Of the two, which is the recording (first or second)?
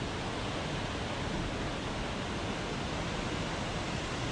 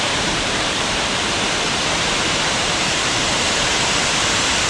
first